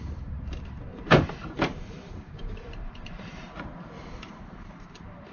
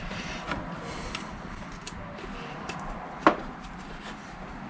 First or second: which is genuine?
second